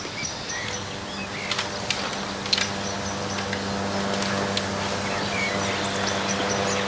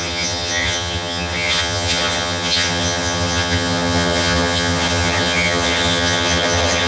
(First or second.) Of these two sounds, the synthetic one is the second